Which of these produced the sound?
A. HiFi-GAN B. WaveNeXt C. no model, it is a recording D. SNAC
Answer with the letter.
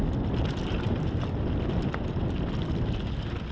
C